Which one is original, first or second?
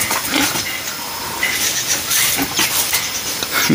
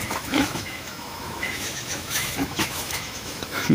first